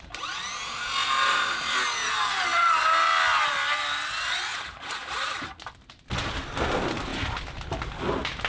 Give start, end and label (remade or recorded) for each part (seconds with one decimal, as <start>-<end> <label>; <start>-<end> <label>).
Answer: 0.0-8.5 recorded